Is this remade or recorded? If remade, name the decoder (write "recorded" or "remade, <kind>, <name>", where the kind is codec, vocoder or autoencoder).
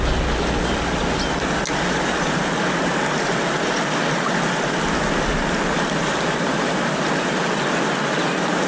recorded